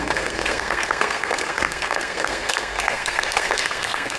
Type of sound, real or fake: fake